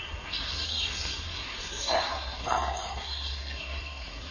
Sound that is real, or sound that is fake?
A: fake